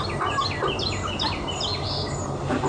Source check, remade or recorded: recorded